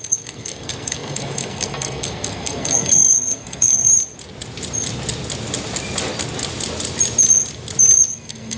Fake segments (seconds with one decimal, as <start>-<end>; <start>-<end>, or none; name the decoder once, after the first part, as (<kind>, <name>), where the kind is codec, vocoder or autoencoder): 0.0-3.9 (codec, SNAC); 8.1-8.6